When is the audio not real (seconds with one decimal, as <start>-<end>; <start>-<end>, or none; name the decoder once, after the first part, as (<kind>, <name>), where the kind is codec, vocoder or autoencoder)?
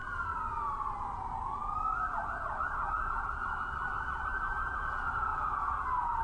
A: 0.0-6.2 (vocoder, BigVGAN v2)